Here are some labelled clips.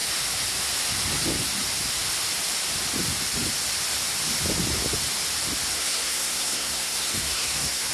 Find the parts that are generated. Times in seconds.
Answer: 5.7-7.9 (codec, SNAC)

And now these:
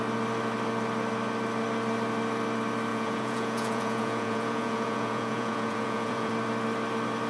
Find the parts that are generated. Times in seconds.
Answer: 2.9-6.3 (vocoder, Vocos)

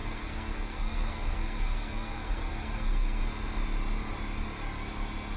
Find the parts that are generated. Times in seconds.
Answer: 0.0-3.2 (codec, SNAC)

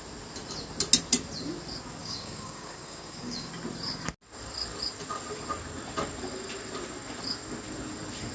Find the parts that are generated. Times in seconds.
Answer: 2.0-3.5 (codec, DAC)

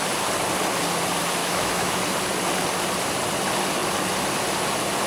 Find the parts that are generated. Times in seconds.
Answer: 1.4-2.0 (autoencoder, DAC-VAE)